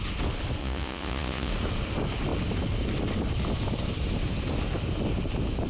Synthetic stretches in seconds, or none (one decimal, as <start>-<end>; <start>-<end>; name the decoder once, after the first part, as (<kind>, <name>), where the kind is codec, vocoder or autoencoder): 0.6-1.5 (vocoder, Vocos)